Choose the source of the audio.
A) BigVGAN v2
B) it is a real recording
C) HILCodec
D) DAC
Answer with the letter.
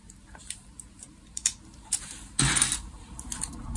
A